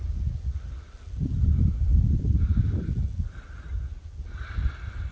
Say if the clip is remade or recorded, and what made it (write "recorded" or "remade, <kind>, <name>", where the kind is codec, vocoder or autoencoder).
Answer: recorded